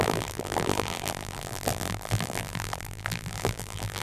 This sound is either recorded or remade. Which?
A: remade